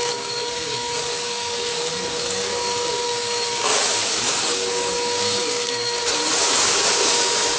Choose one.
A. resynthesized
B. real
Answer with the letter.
A